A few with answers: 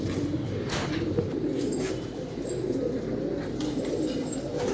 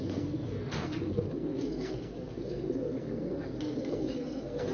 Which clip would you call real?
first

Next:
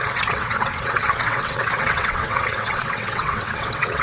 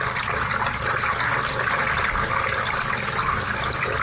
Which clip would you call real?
second